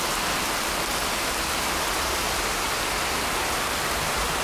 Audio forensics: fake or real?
real